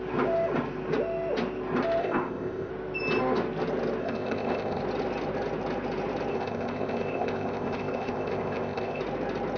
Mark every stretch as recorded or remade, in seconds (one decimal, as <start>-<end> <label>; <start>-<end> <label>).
0.0-2.0 recorded; 2.0-2.7 remade; 2.7-4.0 recorded; 4.0-4.8 remade; 4.8-6.3 recorded; 6.3-9.0 remade; 9.0-9.6 recorded